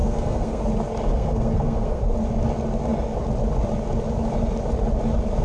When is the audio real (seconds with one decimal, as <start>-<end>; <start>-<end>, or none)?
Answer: 0.6-1.1; 2.0-5.4